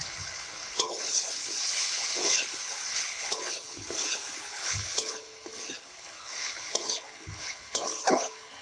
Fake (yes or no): yes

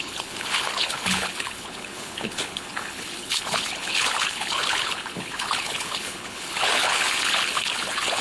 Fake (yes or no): yes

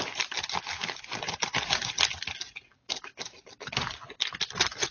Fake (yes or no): no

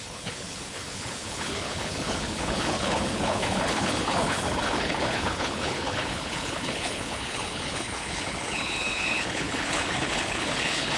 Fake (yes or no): yes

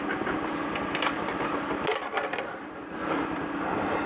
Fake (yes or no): no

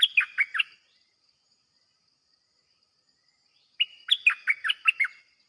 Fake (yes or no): no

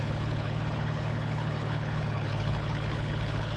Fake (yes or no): yes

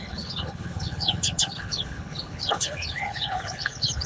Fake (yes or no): yes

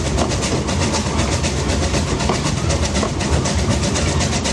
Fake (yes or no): no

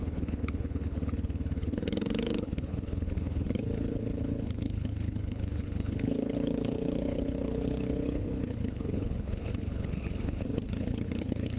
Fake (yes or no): yes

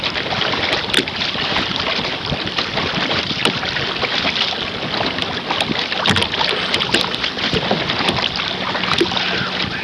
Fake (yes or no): no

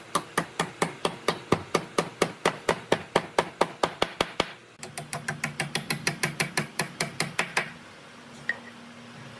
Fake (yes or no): no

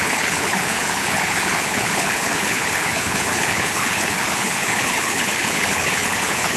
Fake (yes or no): yes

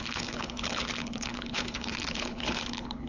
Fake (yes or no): yes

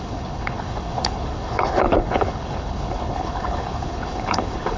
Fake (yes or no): yes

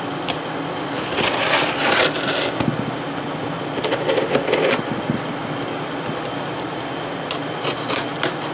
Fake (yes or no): no